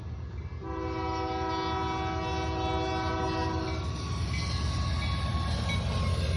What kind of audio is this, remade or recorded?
recorded